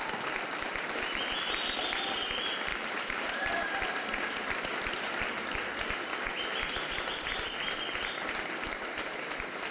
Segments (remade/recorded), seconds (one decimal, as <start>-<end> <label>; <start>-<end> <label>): 0.0-2.7 recorded; 2.7-3.9 remade; 3.9-9.7 recorded